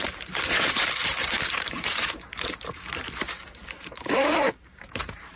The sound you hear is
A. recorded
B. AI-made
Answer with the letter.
B